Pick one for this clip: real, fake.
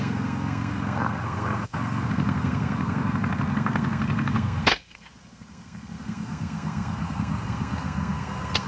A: fake